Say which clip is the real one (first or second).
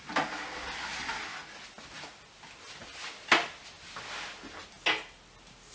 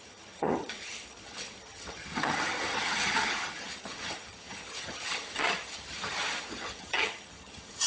first